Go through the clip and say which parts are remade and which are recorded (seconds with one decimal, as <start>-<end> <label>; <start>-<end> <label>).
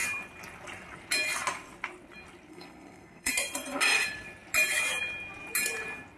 0.0-2.5 recorded; 2.5-3.3 remade; 3.3-6.2 recorded